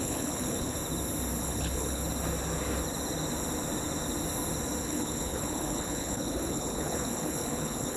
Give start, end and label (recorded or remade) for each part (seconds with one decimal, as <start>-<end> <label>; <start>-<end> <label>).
0.0-0.8 remade; 0.8-1.4 recorded; 1.4-2.0 remade; 2.0-4.8 recorded; 4.8-8.0 remade